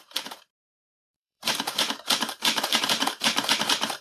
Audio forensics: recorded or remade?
remade